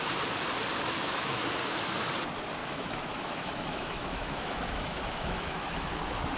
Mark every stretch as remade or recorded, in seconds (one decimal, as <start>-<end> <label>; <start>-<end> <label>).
0.0-1.0 recorded; 1.0-1.5 remade; 1.5-2.6 recorded; 2.6-5.9 remade; 5.9-6.4 recorded